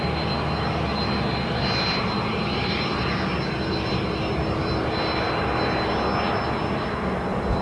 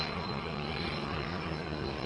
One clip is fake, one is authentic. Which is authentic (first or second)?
first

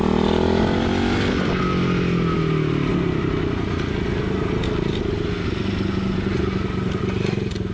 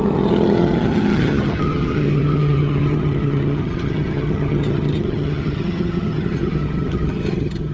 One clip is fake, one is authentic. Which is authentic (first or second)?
first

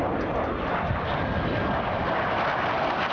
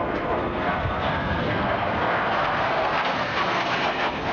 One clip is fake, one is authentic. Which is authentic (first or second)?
first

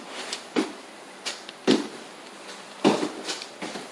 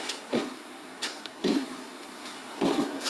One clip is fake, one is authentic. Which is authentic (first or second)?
first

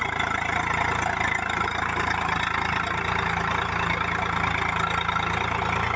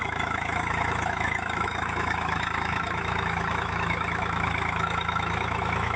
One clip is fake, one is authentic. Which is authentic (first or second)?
first